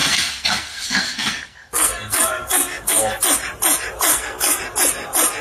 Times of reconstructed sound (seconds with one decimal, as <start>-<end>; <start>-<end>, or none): 0.0-3.2; 4.1-4.6